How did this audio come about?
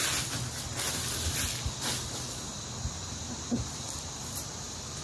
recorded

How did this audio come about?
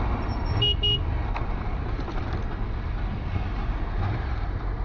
recorded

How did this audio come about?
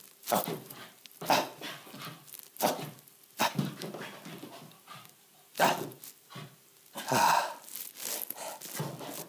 recorded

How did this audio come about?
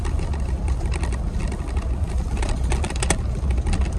recorded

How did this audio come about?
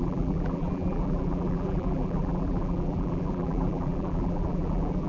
remade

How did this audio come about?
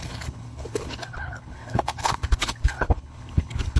remade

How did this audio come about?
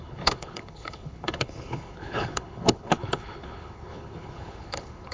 remade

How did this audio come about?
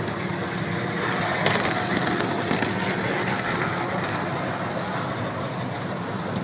recorded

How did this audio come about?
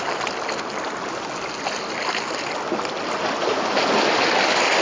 recorded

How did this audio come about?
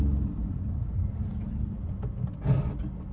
recorded